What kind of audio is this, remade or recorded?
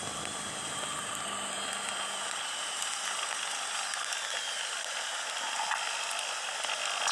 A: recorded